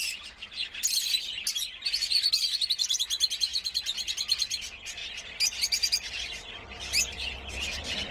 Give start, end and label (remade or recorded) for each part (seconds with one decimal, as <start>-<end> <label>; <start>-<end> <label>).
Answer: 0.0-5.0 remade; 5.0-7.1 recorded; 7.1-8.1 remade